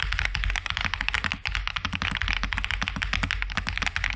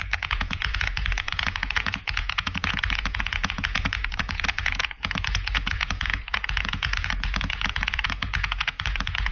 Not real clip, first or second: second